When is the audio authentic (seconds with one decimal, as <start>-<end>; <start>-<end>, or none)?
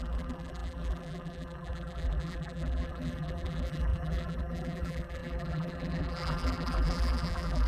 none